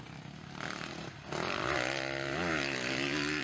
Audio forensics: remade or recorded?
recorded